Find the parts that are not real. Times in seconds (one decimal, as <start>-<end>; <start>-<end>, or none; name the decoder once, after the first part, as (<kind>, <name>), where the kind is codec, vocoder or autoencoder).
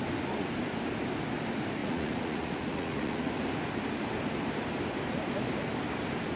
1.8-3.3 (vocoder, Vocos)